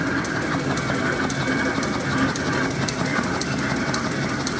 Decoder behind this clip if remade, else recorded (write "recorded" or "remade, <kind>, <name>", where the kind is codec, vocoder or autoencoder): recorded